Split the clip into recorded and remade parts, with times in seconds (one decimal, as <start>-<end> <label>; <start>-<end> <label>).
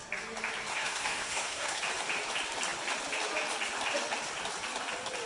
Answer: 0.0-0.7 recorded; 0.7-1.8 remade; 1.8-5.3 recorded